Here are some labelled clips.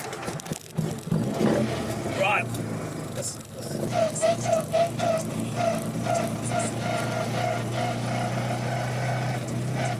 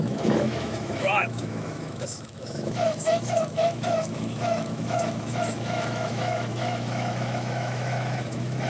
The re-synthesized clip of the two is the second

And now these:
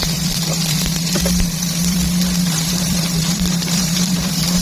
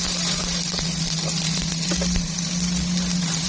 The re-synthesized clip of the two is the first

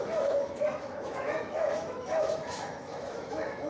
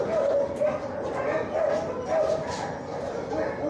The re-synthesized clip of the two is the first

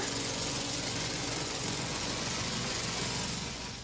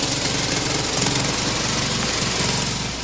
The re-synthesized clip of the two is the first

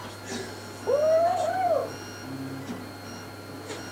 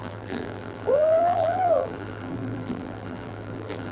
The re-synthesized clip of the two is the second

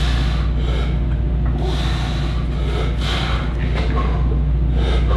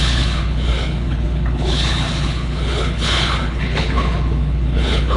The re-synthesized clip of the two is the second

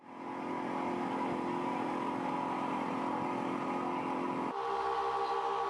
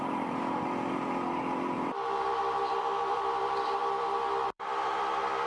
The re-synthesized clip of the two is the second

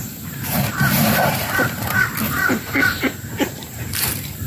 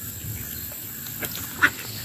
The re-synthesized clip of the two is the first